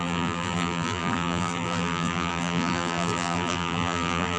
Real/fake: fake